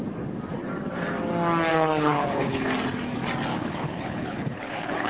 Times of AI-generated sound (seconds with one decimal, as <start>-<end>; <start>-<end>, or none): 1.7-2.7; 3.5-5.1